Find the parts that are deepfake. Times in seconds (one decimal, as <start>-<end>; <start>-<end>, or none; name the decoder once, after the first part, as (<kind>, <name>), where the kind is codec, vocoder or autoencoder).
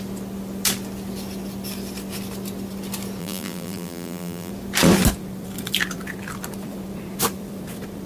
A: 3.2-4.5 (vocoder, BigVGAN v2)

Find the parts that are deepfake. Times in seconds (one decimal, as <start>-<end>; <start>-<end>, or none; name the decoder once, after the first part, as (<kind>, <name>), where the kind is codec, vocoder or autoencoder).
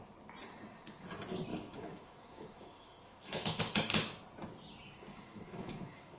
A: 1.5-3.6 (autoencoder, DAC-VAE); 5.1-6.2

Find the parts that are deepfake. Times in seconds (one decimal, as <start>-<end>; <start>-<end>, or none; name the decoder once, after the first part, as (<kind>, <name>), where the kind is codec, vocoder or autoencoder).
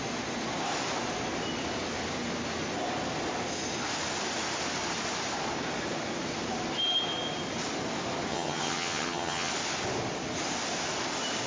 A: 8.3-9.5 (vocoder, HiFi-GAN)